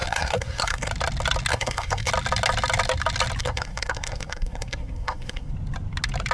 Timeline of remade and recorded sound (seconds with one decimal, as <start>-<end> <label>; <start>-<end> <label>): 0.0-0.9 remade; 0.9-1.5 recorded; 1.5-2.1 remade; 2.1-3.4 recorded; 3.4-5.5 remade; 5.5-6.3 recorded